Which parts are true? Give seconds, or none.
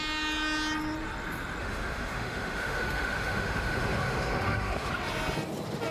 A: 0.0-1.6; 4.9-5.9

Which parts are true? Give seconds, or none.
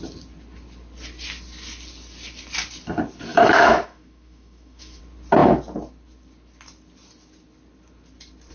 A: 0.0-3.3; 5.0-8.5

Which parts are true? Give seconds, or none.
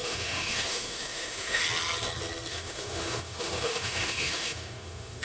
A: 1.6-2.5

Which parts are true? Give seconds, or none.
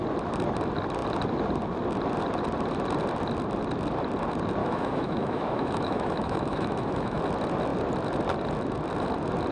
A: 0.0-4.6; 7.2-9.5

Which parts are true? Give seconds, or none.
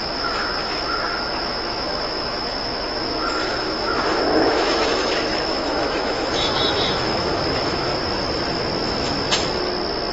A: 7.9-10.1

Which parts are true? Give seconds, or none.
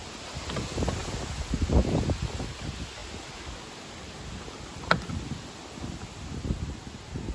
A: 0.0-7.3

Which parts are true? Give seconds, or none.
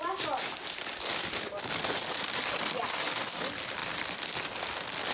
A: 0.0-5.1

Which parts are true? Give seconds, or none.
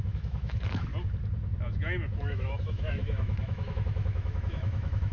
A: 0.9-2.2